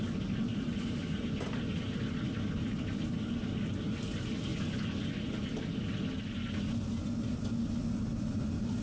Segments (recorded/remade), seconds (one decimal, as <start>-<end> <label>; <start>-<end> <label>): 0.0-8.8 recorded